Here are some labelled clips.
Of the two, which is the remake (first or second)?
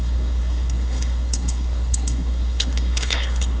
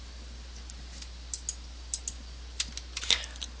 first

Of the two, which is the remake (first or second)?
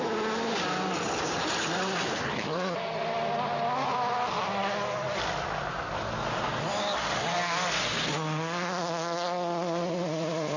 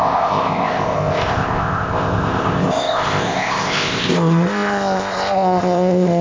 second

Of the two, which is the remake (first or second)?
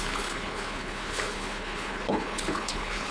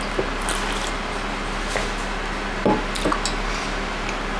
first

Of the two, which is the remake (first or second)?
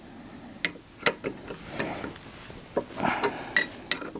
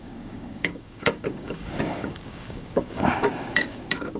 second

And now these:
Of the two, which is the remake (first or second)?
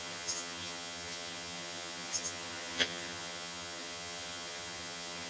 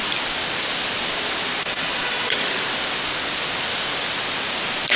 first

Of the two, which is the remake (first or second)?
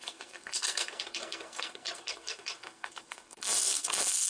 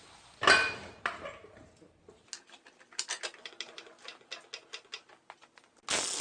first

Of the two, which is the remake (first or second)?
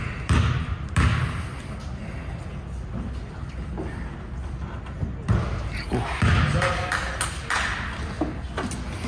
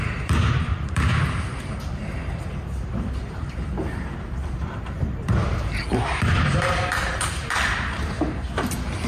second